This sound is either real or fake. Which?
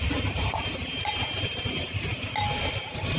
real